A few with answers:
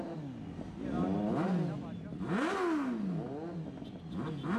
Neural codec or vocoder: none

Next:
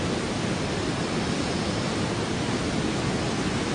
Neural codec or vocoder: none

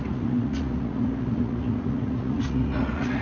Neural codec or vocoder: vocoder, Vocos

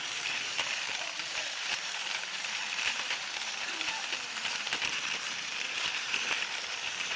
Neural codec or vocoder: vocoder, BigVGAN v2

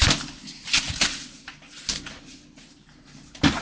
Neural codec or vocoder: none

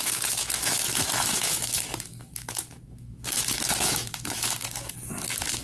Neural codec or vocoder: autoencoder, DAC-VAE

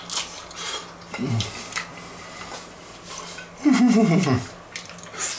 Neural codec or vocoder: none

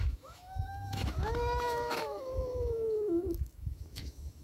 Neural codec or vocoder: autoencoder, DAC-VAE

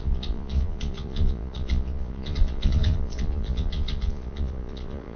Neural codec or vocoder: vocoder, Vocos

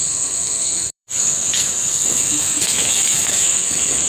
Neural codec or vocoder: codec, SNAC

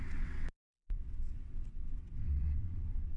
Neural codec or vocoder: vocoder, WaveNeXt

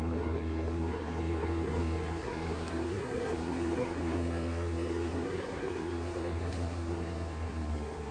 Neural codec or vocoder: codec, SNAC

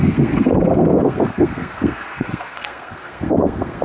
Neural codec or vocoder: codec, SNAC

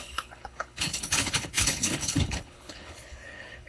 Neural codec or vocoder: codec, HILCodec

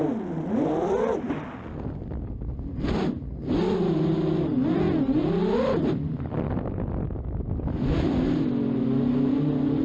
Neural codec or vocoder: none